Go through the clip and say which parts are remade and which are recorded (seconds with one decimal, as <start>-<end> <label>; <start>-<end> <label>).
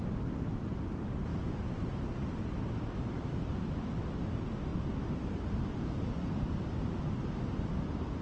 0.0-1.3 recorded; 1.3-2.1 remade; 2.1-4.7 recorded; 4.7-7.3 remade; 7.3-8.2 recorded